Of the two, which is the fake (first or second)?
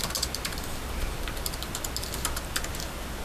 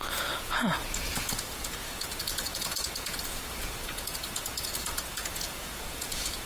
second